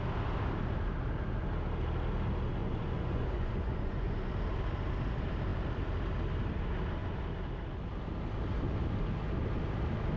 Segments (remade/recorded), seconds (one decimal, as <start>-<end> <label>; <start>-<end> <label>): 0.0-2.6 recorded; 2.6-4.3 remade; 4.3-10.2 recorded